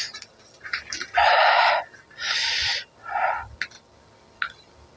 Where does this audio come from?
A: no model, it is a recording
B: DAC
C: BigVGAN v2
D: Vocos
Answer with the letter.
A